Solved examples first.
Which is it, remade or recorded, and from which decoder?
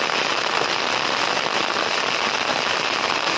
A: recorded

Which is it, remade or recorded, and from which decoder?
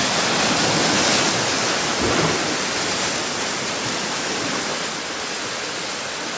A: recorded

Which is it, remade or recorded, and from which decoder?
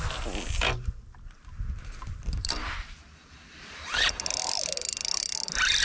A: recorded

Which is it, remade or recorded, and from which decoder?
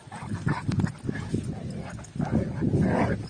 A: recorded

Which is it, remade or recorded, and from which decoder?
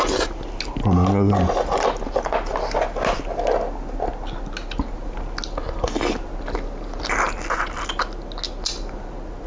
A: recorded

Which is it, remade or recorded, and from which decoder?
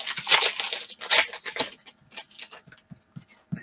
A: recorded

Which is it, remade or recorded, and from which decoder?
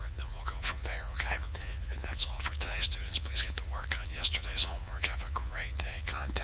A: remade, vocoder, Vocos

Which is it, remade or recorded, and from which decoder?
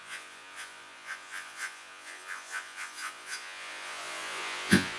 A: remade, vocoder, Vocos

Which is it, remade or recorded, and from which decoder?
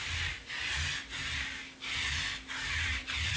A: recorded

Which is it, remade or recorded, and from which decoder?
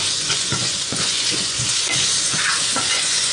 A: remade, vocoder, Vocos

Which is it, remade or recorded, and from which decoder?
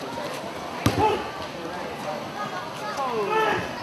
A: recorded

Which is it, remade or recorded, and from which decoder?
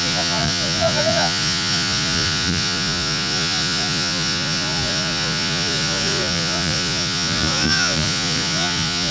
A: remade, vocoder, Vocos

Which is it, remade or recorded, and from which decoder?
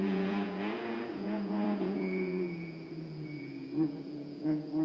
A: remade, vocoder, Vocos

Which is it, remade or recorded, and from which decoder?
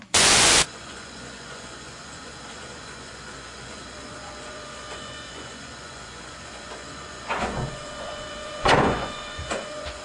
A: remade, vocoder, Vocos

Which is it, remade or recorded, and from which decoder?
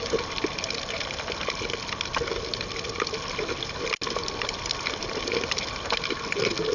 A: recorded